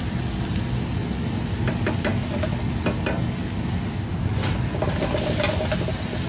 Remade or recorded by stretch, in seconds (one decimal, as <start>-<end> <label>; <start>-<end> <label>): 0.0-6.3 recorded